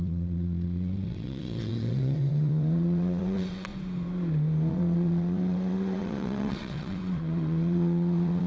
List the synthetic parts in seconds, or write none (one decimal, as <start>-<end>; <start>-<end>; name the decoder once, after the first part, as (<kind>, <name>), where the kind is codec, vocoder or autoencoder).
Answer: 0.0-3.7 (vocoder, WaveNeXt); 4.7-8.5